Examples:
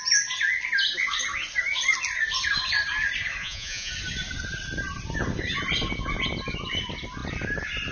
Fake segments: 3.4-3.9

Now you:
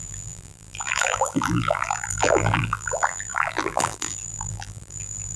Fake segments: 0.0-5.4

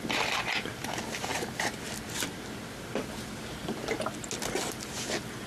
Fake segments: none